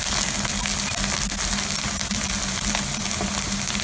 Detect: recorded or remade recorded